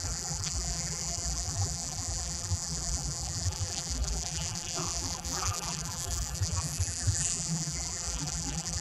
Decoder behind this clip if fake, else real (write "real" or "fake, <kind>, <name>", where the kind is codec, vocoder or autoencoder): fake, vocoder, BigVGAN v2